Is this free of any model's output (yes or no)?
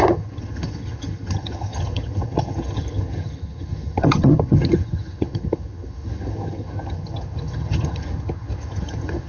no